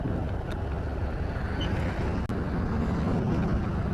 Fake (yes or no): no